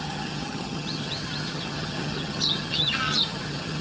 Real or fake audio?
fake